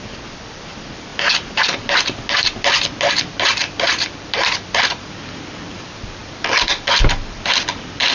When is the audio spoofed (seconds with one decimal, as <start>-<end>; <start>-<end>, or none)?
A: 0.0-1.1; 3.1-8.1